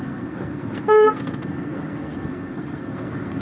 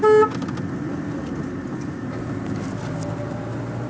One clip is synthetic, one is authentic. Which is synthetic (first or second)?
first